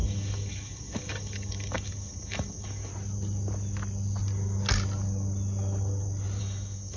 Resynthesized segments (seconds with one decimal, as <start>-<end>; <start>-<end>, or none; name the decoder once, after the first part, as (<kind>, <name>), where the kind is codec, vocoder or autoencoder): 0.0-2.9 (autoencoder, DAC-VAE); 6.4-7.0